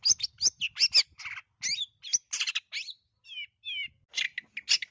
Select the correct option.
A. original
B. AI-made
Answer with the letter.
A